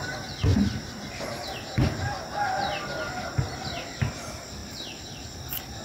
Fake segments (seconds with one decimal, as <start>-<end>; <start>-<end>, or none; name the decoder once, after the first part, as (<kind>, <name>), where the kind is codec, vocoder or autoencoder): none